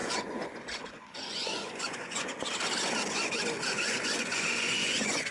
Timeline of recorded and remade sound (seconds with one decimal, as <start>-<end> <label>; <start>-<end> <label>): 0.0-2.3 remade; 2.3-3.1 recorded; 3.1-5.3 remade